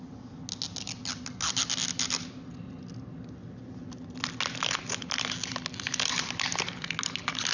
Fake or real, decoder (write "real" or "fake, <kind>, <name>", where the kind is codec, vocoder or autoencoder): real